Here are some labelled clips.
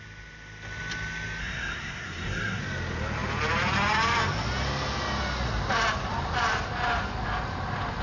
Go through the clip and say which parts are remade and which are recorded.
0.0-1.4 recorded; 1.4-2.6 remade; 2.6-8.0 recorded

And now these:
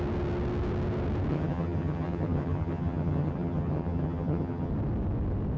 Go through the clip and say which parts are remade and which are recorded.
0.0-1.3 recorded; 1.3-4.7 remade; 4.7-5.6 recorded

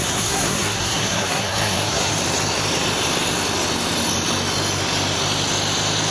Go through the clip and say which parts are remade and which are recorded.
0.0-2.1 remade; 2.1-6.1 recorded

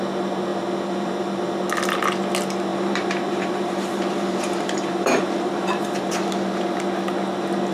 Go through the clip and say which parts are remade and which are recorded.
0.0-0.5 recorded; 0.5-1.6 remade; 1.6-2.7 recorded; 2.7-6.3 remade; 6.3-7.7 recorded